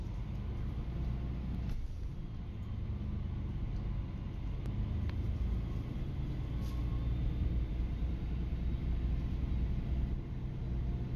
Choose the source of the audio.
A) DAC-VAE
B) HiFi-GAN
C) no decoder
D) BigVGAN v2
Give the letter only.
C